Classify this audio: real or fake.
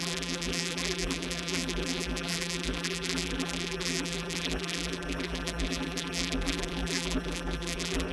fake